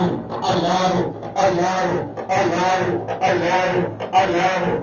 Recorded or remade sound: recorded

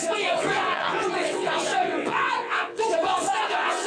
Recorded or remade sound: remade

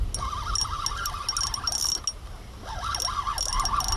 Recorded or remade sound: recorded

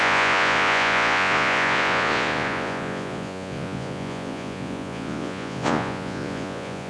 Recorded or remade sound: remade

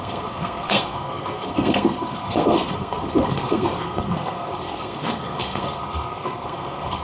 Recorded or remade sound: remade